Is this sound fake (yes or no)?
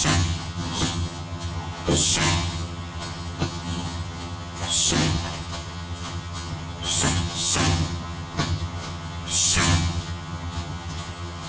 yes